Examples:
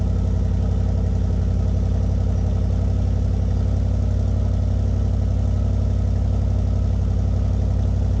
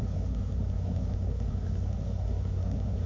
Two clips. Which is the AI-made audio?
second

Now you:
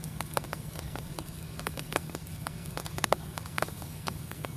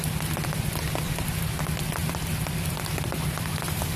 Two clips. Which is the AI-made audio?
first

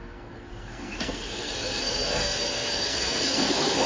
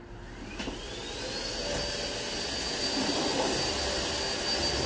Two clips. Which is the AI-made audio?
first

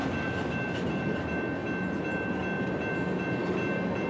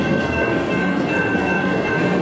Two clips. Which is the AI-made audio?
second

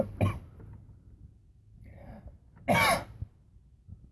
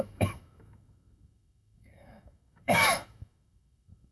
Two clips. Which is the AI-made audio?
second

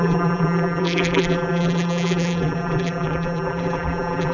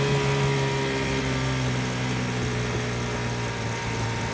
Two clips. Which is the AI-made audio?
first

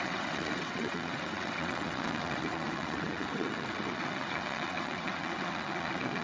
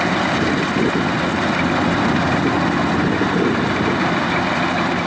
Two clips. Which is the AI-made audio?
first